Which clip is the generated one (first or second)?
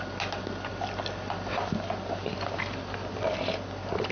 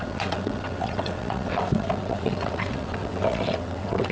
second